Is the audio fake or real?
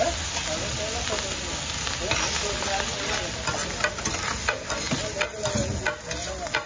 real